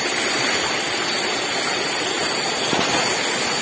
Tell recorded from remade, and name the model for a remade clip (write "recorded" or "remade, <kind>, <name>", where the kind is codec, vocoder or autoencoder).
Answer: recorded